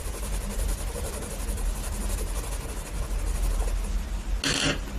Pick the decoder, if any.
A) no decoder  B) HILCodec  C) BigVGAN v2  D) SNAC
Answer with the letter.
A